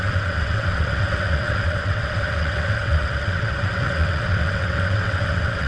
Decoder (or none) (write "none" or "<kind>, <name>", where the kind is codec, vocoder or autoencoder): vocoder, WaveNeXt